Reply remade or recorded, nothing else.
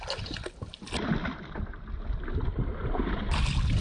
recorded